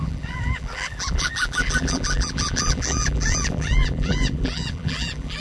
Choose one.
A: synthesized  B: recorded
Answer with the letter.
A